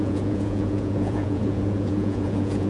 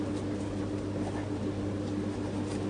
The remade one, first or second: first